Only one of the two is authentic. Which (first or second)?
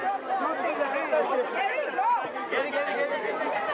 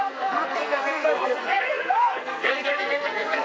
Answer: first